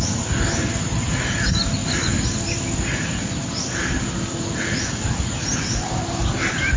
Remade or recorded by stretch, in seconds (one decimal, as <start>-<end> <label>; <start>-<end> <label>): 0.0-6.8 recorded